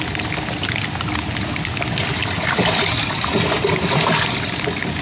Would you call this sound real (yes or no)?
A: yes